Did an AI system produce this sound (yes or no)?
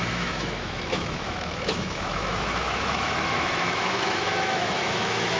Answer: yes